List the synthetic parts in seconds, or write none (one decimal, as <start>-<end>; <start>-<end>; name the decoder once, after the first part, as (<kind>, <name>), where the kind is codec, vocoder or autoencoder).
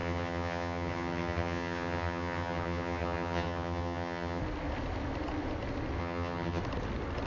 0.0-4.4 (vocoder, HiFi-GAN); 6.0-6.6